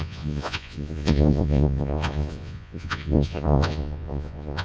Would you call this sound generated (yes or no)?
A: yes